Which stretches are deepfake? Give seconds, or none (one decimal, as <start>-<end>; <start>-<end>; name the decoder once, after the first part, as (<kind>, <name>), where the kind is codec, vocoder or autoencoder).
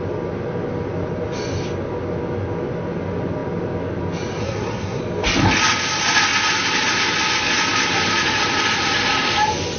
4.4-5.0 (codec, SNAC)